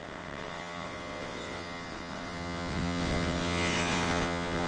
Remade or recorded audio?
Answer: remade